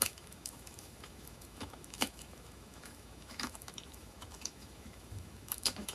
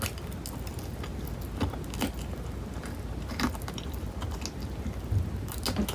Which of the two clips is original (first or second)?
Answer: second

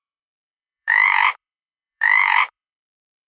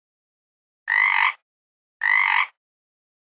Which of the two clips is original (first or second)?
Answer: second